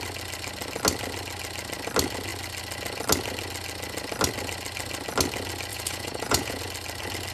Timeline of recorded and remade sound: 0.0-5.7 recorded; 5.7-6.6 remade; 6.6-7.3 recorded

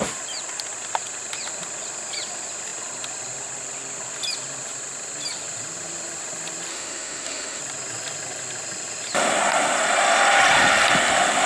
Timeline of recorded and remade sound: 0.0-6.7 recorded; 6.7-7.6 remade; 7.6-11.5 recorded

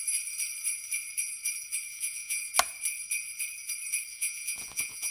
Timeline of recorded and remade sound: 0.0-1.9 recorded; 1.9-2.4 remade; 2.4-4.1 recorded; 4.1-5.1 remade

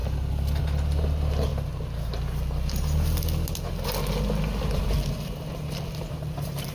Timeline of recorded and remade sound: 0.0-6.7 recorded

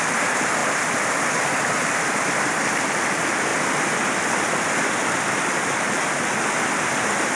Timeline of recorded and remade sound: 0.0-7.4 recorded

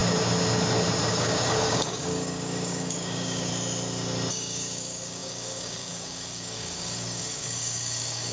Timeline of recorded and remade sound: 0.0-1.1 recorded; 1.1-3.5 remade; 3.5-4.3 recorded; 4.3-8.3 remade

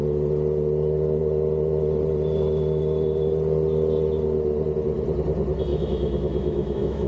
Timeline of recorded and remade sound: 0.0-5.7 recorded; 5.7-7.1 remade